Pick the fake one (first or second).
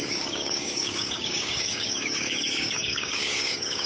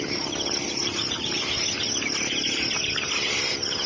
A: first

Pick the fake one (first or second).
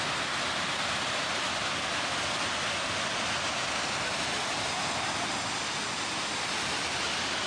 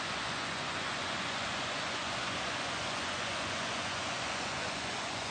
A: second